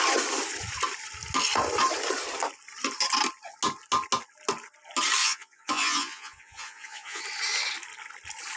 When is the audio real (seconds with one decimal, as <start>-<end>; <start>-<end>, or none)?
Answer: 0.0-5.2; 7.2-8.6